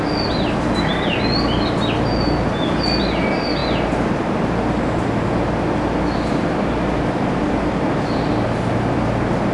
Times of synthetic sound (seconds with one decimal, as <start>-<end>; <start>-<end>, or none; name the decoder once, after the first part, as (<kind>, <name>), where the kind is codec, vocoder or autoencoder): none